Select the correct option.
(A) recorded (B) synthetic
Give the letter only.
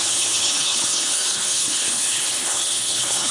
B